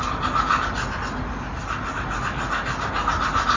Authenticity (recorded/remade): recorded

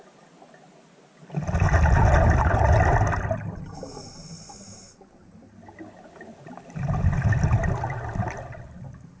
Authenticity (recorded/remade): recorded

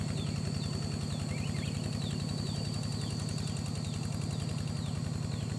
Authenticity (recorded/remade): recorded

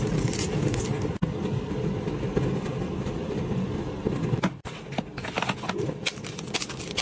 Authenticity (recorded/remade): recorded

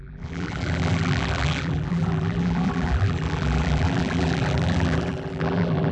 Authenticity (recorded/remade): remade